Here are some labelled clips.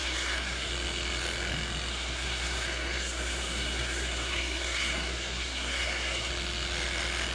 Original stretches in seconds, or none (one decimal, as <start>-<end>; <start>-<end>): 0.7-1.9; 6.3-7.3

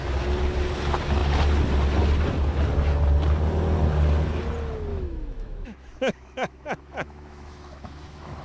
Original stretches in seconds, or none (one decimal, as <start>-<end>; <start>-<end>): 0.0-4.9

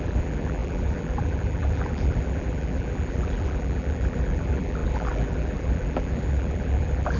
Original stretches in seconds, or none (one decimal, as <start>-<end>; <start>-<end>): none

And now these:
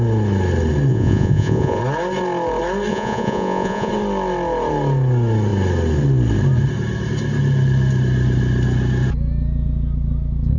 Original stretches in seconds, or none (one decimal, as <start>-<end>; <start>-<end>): 0.0-0.9; 1.8-2.9; 3.9-10.6

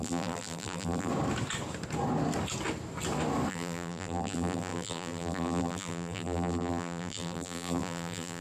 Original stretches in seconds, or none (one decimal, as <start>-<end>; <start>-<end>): 1.1-3.5

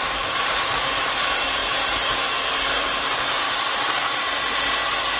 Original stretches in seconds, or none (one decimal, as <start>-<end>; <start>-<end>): 0.0-5.2

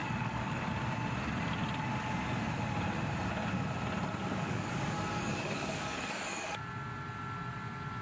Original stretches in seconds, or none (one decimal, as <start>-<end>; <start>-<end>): 0.7-4.2; 6.6-8.0

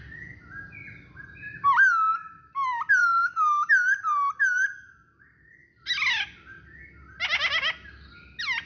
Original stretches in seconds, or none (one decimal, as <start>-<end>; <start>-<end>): 0.0-3.0; 3.7-8.7